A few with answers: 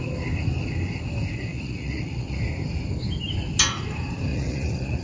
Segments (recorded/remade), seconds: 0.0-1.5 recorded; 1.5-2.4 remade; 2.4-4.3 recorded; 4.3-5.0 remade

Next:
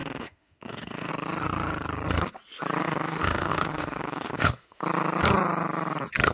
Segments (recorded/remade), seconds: 0.0-1.1 remade; 1.1-2.8 recorded; 2.8-4.8 remade; 4.8-6.3 recorded

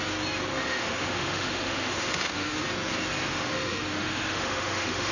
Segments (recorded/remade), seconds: 0.0-0.5 recorded; 0.5-2.6 remade; 2.6-3.3 recorded; 3.3-5.1 remade

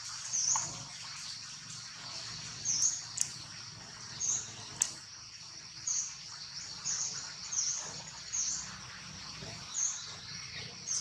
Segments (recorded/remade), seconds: 0.0-11.0 recorded

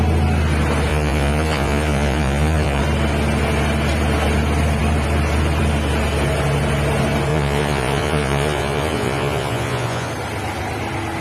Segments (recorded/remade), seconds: 0.0-0.9 recorded; 0.9-2.8 remade; 2.8-7.3 recorded; 7.3-10.1 remade; 10.1-11.2 recorded

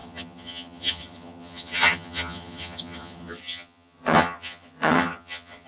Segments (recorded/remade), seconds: 0.0-5.7 remade

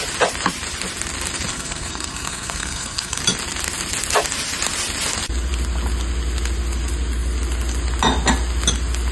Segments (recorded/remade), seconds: 0.0-1.5 recorded; 1.5-3.2 remade; 3.2-9.1 recorded